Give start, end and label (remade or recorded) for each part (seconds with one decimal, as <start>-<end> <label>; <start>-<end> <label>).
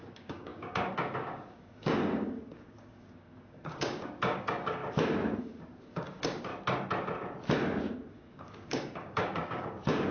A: 0.0-4.8 remade; 4.8-5.4 recorded; 5.4-6.5 remade; 6.5-8.1 recorded; 8.1-10.1 remade